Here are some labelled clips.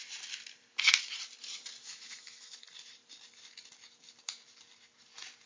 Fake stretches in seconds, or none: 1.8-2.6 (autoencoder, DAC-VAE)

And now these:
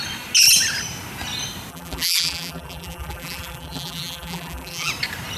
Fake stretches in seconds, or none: 1.7-4.9 (vocoder, BigVGAN v2)

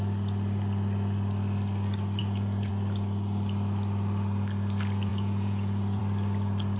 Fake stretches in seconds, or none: 2.2-2.7 (vocoder, Vocos); 5.1-6.0

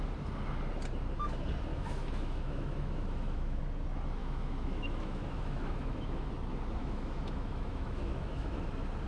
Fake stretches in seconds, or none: 1.7-3.6 (autoencoder, DAC-VAE); 4.2-6.3; 6.8-8.6